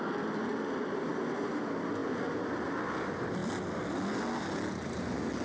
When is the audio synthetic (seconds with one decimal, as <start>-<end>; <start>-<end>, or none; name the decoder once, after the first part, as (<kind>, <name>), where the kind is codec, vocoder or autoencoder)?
none

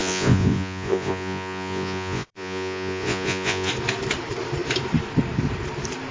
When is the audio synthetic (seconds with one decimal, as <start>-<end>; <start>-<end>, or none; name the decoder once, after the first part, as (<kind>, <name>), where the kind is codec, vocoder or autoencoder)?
0.0-3.7 (vocoder, Vocos)

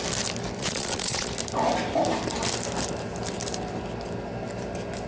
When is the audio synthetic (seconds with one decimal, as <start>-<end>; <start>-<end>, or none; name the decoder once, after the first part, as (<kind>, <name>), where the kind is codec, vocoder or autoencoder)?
0.6-1.3 (vocoder, Vocos)

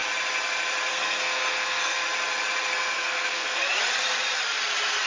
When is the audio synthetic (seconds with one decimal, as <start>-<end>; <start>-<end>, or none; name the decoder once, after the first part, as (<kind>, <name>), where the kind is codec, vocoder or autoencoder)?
0.9-2.0 (codec, SNAC); 2.7-3.6

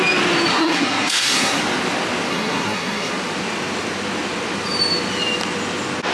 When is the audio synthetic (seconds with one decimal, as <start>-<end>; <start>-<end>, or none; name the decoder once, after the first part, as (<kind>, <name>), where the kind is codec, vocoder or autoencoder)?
0.5-1.6 (codec, SNAC); 2.3-3.1

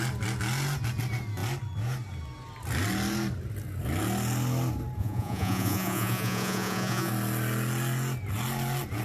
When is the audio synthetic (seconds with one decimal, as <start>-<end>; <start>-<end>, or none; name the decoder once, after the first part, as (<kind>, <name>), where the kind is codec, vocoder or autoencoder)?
5.0-7.1 (vocoder, Vocos)

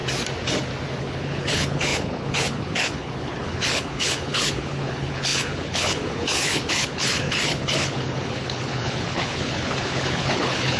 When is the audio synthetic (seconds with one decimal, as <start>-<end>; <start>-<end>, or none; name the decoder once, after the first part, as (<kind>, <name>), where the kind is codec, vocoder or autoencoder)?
1.0-10.8 (codec, HILCodec)